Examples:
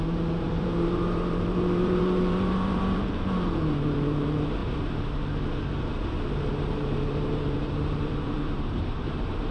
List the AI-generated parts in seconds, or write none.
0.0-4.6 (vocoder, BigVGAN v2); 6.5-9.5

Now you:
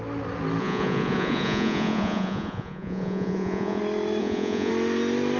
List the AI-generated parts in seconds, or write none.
0.6-3.8 (vocoder, Vocos); 4.2-4.7

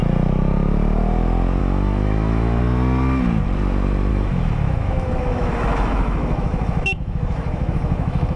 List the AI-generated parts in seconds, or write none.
1.6-2.6 (autoencoder, DAC-VAE); 4.1-8.4